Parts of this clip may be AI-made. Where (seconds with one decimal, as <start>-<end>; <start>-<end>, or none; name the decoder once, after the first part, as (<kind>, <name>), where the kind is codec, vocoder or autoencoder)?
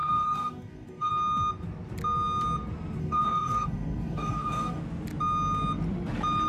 0.0-1.1 (codec, DAC); 3.0-4.8